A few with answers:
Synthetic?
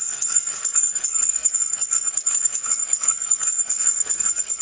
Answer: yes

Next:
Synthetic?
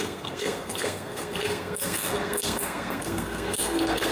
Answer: yes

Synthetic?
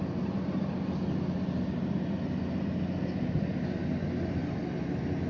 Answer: no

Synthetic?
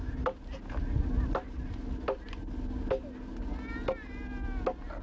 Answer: no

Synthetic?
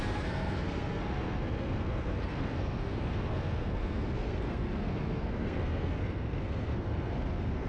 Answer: yes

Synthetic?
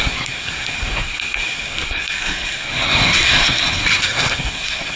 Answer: yes